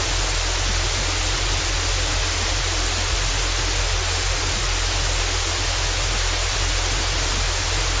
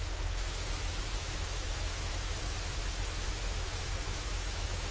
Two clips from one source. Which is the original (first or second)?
first